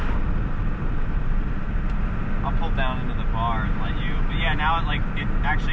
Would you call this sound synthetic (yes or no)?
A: no